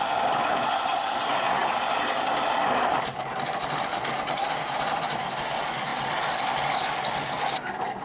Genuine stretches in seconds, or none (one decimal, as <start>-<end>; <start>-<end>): 0.0-8.0